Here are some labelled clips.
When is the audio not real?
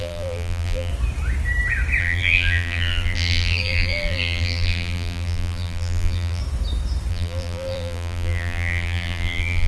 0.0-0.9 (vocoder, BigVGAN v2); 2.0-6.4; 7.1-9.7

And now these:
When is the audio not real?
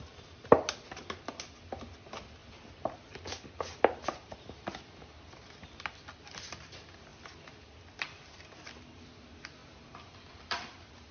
2.4-5.7 (vocoder, BigVGAN v2); 9.6-10.3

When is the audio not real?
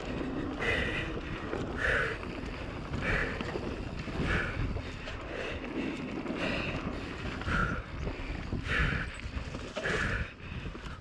8.8-10.1 (vocoder, BigVGAN v2)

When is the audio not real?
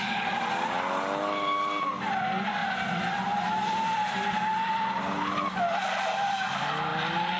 2.6-4.3 (vocoder, BigVGAN v2)